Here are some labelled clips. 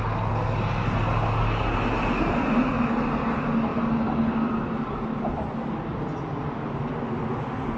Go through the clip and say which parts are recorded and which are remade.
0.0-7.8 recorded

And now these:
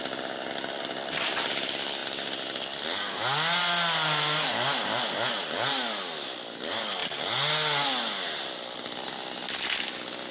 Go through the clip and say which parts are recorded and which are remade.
0.0-10.3 recorded

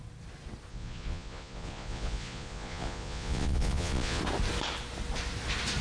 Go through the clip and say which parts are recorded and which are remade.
0.0-0.7 recorded; 0.7-4.2 remade; 4.2-5.8 recorded

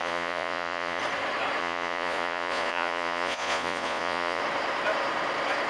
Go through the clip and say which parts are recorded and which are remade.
0.0-1.0 remade; 1.0-1.6 recorded; 1.6-4.4 remade; 4.4-5.7 recorded

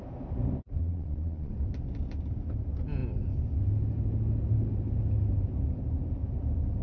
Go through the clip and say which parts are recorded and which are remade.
0.0-0.8 recorded; 0.8-1.5 remade; 1.5-6.8 recorded

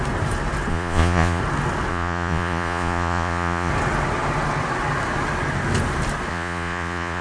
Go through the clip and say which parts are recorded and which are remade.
0.0-0.7 recorded; 0.7-1.4 remade; 1.4-1.9 recorded; 1.9-3.7 remade; 3.7-6.3 recorded; 6.3-7.2 remade

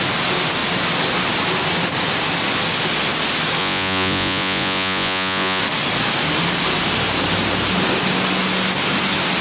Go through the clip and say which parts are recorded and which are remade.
0.0-3.6 recorded; 3.6-5.6 remade; 5.6-9.4 recorded

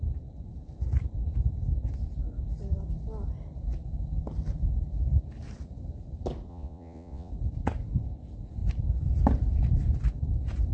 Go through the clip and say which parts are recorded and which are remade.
0.0-6.5 recorded; 6.5-7.3 remade; 7.3-10.7 recorded